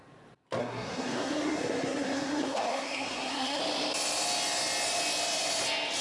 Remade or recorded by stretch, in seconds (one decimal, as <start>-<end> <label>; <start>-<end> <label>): 0.0-0.6 recorded; 0.6-3.6 remade; 3.6-6.0 recorded